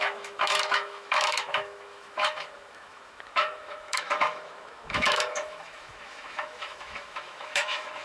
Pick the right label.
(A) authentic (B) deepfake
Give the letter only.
B